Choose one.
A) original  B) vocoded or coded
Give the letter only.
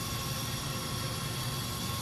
A